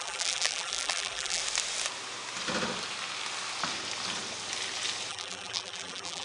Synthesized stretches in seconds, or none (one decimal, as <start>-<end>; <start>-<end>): 0.0-1.4; 5.1-6.2